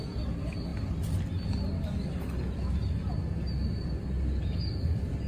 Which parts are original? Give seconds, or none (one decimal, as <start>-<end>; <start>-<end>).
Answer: 0.0-5.3